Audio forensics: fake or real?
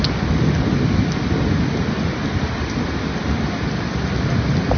real